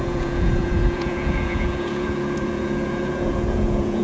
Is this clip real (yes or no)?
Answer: no